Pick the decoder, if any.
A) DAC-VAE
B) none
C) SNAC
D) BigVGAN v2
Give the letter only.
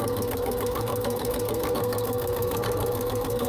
C